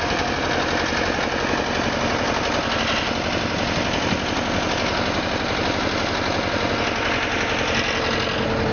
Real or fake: real